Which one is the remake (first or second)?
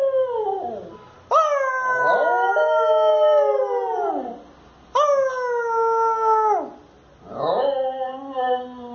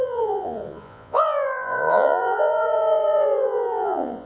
second